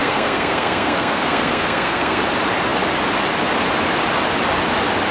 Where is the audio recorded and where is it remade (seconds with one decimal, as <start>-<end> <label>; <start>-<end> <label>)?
0.0-2.2 remade; 2.2-5.1 recorded